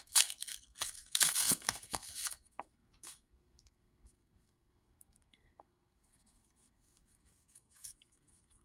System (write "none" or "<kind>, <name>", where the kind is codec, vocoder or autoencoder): codec, SNAC